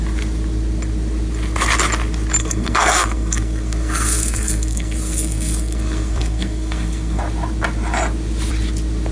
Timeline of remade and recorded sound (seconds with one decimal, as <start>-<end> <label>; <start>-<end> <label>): 0.0-2.4 recorded; 2.4-7.2 remade; 7.2-9.1 recorded